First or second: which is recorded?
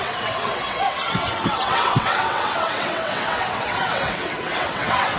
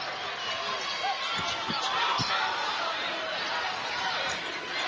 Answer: second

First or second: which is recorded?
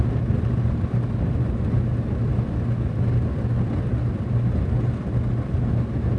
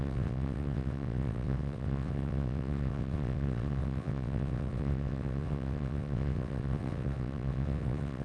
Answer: first